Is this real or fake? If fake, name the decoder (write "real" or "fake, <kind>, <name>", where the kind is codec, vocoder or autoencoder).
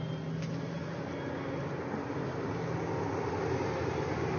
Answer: real